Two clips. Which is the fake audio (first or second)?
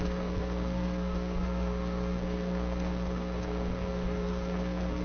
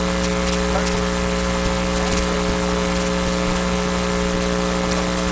first